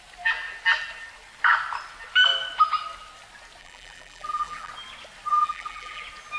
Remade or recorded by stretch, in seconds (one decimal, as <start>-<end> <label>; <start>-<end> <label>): 0.0-3.6 recorded; 3.6-4.7 remade; 4.7-5.3 recorded; 5.3-6.0 remade; 6.0-6.4 recorded